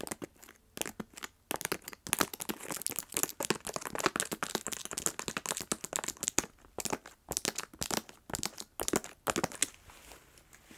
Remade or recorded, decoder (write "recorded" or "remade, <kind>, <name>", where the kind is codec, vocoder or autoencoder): recorded